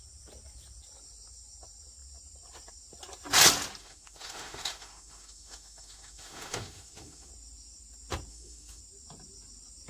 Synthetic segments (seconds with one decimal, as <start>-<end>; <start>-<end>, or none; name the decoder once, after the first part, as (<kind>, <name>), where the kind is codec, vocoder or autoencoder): 3.8-7.3 (autoencoder, DAC-VAE); 8.3-8.8